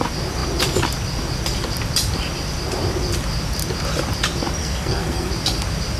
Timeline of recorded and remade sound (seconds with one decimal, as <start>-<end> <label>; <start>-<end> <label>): 0.0-4.6 recorded; 4.6-5.3 remade; 5.3-6.0 recorded